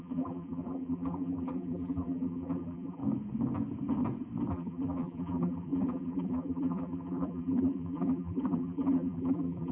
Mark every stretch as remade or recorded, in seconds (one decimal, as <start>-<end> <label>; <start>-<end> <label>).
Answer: 0.0-3.0 remade; 3.0-4.5 recorded; 4.5-9.7 remade